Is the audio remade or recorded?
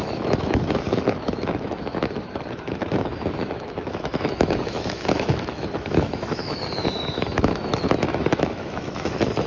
remade